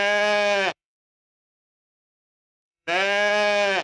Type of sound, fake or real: fake